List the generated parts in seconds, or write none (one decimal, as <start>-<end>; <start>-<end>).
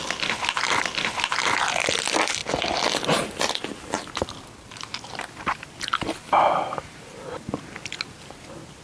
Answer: none